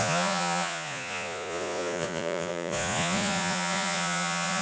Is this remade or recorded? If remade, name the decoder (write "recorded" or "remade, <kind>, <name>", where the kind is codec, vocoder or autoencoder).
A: remade, vocoder, Vocos